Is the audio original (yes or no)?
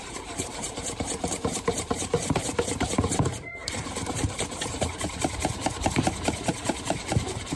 no